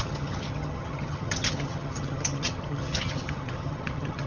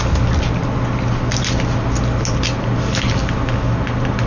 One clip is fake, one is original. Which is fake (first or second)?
first